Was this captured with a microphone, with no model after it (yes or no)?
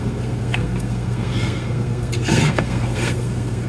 no